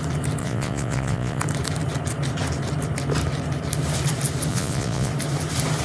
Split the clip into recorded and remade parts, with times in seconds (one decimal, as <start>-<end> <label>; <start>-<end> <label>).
0.0-0.4 recorded; 0.4-1.4 remade; 1.4-4.5 recorded; 4.5-5.1 remade; 5.1-5.8 recorded